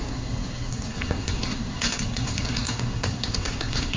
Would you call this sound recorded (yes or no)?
no